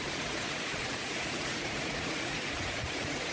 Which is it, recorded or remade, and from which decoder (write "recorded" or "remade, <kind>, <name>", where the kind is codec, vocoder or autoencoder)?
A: remade, vocoder, Vocos